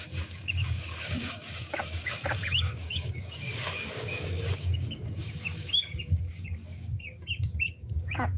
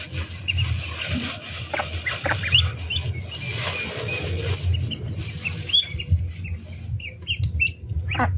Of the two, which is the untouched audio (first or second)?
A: second